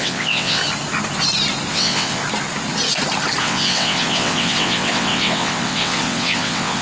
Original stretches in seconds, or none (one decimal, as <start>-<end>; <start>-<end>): 0.6-1.7; 2.2-3.4